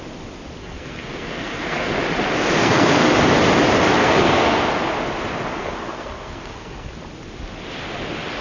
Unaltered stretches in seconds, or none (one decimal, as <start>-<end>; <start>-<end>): 0.0-0.6; 1.9-2.6; 3.2-4.0; 4.6-5.6; 6.9-8.4